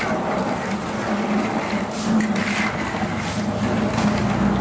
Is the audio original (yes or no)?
yes